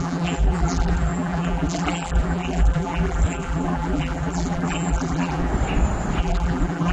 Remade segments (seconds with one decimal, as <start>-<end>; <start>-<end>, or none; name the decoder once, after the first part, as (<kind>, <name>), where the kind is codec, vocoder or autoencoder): 0.0-5.5 (vocoder, BigVGAN v2); 6.2-6.9